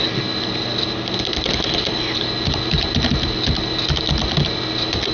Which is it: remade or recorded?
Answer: recorded